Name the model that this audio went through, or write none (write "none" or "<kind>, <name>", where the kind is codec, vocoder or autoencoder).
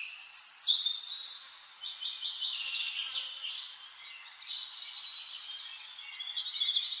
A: none